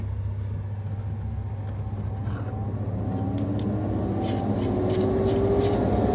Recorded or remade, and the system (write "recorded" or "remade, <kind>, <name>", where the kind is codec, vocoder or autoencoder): recorded